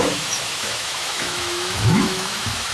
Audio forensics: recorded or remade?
remade